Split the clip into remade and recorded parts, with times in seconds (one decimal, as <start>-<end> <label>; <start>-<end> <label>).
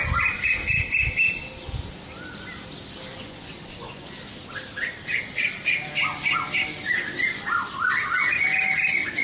0.0-3.1 recorded; 3.1-4.1 remade; 4.1-9.2 recorded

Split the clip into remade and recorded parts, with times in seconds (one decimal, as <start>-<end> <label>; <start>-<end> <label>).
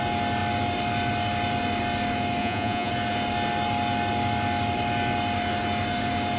0.0-2.4 recorded; 2.4-2.9 remade; 2.9-6.4 recorded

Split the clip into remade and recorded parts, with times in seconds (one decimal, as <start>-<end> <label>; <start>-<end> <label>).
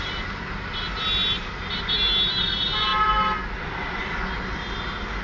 0.0-5.2 recorded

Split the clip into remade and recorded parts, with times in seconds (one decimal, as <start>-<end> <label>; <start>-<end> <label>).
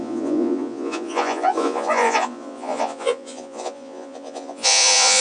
0.0-5.2 remade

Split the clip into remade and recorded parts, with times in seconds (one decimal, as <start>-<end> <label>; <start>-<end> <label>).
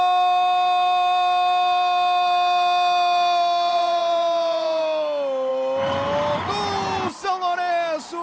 0.0-3.7 recorded; 3.7-4.8 remade; 4.8-8.2 recorded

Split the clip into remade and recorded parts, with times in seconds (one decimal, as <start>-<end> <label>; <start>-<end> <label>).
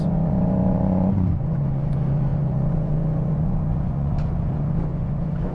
0.0-5.5 remade